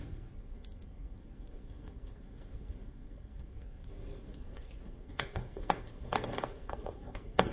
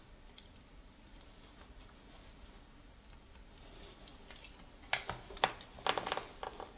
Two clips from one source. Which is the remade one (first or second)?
first